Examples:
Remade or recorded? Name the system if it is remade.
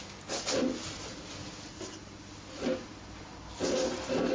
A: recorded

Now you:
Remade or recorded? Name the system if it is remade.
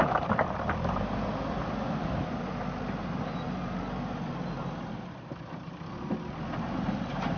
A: recorded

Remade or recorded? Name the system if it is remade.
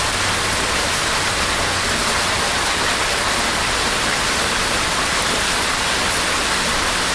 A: recorded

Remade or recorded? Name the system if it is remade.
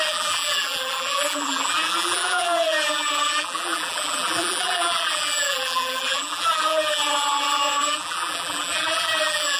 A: remade, vocoder, BigVGAN v2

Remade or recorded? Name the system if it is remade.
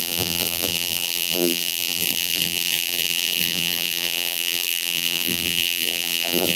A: remade, vocoder, BigVGAN v2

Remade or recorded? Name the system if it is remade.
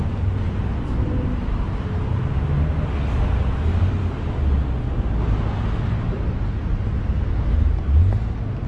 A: recorded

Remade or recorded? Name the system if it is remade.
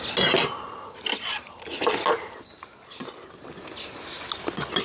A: recorded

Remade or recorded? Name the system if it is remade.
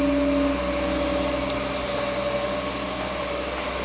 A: recorded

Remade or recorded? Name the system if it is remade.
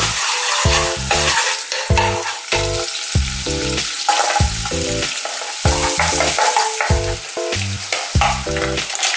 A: recorded